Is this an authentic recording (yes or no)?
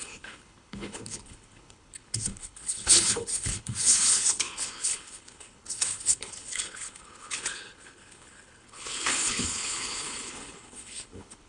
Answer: no